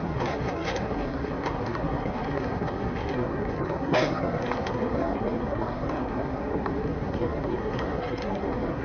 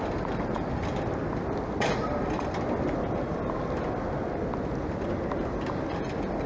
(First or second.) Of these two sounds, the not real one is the first